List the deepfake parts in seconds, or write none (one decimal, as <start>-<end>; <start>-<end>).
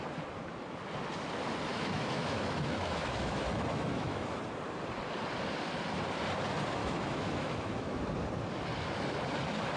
1.7-4.4; 6.8-8.0